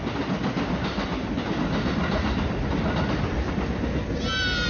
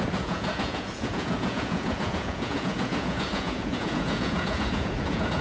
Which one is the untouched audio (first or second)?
first